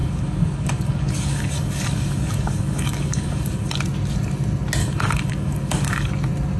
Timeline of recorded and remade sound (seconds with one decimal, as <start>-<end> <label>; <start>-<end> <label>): 0.0-3.7 remade; 3.7-4.8 recorded; 4.8-6.1 remade; 6.1-6.6 recorded